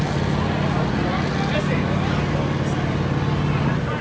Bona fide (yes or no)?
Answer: yes